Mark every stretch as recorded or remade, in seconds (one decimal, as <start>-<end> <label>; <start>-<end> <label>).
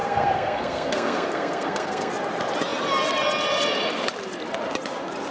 0.0-2.1 remade; 2.1-5.3 recorded